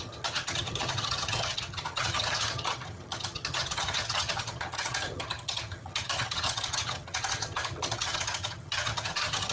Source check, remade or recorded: remade